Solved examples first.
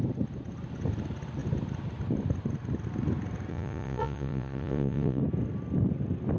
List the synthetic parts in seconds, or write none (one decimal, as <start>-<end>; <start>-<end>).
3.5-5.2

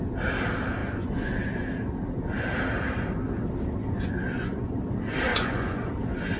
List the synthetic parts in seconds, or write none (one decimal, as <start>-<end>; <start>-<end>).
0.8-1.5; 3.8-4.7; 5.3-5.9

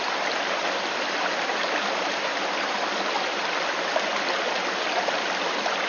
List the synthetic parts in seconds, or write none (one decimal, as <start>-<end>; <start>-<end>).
none